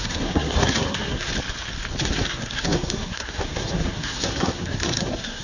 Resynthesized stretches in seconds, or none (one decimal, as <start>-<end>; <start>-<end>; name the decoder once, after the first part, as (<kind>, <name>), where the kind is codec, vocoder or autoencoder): 0.0-1.3 (codec, SNAC); 2.0-5.4